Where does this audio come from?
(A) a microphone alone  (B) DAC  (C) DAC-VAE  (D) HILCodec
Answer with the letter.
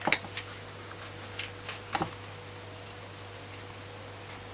A